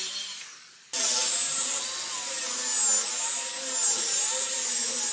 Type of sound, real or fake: real